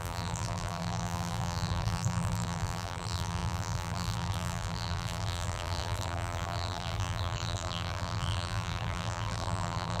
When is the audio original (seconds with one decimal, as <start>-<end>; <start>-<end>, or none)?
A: none

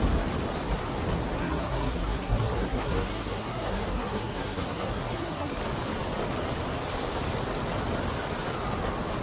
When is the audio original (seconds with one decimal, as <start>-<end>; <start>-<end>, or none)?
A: 0.0-1.4; 5.6-9.2

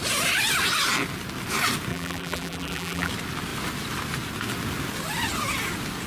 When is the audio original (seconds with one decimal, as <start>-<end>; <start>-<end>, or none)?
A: 0.0-1.9; 3.1-6.1

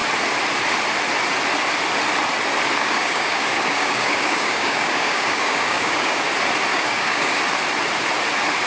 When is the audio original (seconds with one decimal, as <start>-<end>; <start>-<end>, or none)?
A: 0.0-2.8; 6.2-6.7; 7.4-8.7

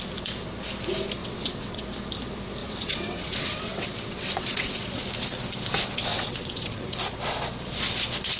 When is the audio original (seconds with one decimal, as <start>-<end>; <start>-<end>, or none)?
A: 0.0-1.2; 1.8-2.6; 5.0-6.1; 7.1-8.4

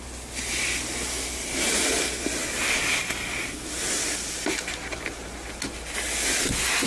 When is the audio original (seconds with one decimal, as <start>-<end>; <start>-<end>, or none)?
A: 0.0-6.9

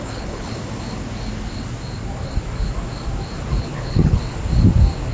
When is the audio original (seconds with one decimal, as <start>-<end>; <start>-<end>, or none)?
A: 0.5-3.6; 4.2-5.1